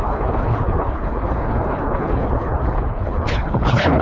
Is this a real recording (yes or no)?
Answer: no